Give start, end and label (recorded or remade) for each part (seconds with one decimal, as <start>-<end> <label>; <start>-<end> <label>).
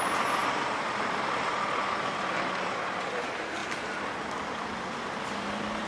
0.0-0.4 recorded; 0.4-1.9 remade; 1.9-5.9 recorded